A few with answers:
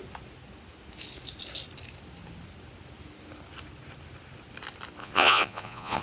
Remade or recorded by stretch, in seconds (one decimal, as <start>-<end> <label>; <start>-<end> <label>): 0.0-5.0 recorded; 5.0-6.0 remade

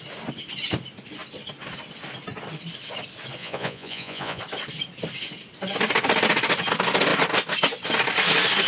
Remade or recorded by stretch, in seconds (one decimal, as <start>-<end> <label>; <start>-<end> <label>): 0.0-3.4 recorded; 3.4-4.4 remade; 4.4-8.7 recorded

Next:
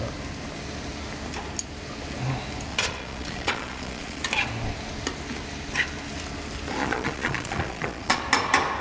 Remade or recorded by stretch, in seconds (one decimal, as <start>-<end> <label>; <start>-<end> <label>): 0.0-2.7 recorded; 2.7-4.2 remade; 4.2-6.8 recorded; 6.8-8.2 remade; 8.2-8.8 recorded

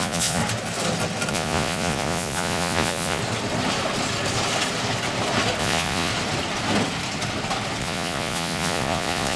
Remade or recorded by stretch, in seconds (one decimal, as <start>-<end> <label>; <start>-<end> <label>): 0.0-0.4 remade; 0.4-1.3 recorded; 1.3-3.2 remade; 3.2-5.6 recorded; 5.6-6.1 remade; 6.1-7.8 recorded; 7.8-9.4 remade

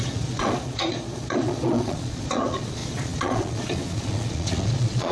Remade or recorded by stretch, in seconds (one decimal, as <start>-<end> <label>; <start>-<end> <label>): 0.0-5.1 remade

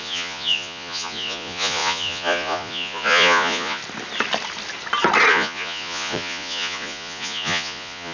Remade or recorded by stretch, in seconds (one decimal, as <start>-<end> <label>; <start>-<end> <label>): 0.0-3.8 remade; 3.8-5.3 recorded; 5.3-8.1 remade

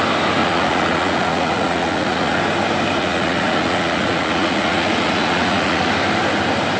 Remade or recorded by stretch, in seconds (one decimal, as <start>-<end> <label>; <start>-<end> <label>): 0.0-0.4 recorded; 0.4-2.4 remade; 2.4-3.0 recorded; 3.0-5.9 remade; 5.9-6.8 recorded